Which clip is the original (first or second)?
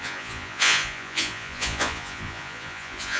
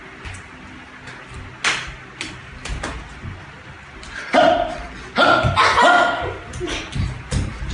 second